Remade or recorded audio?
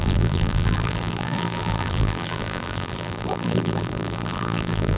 remade